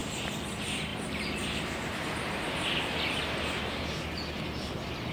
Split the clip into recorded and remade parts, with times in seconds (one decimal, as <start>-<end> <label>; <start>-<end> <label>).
0.0-0.5 remade; 0.5-0.9 recorded; 0.9-3.6 remade; 3.6-5.1 recorded